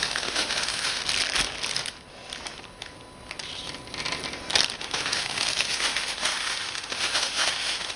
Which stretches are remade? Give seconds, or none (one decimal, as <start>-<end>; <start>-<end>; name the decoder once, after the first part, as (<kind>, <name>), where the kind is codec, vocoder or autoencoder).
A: 0.0-1.0 (autoencoder, DAC-VAE); 4.8-8.0